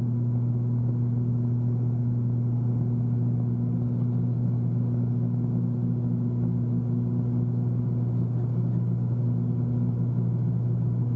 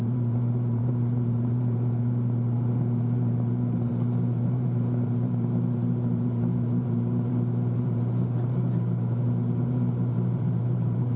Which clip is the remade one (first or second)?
second